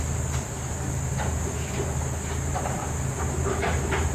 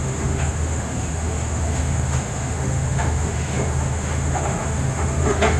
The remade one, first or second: second